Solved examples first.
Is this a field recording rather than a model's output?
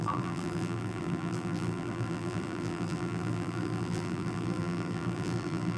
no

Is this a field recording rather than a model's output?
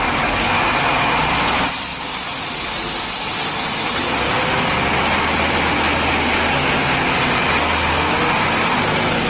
yes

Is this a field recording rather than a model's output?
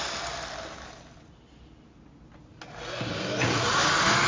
yes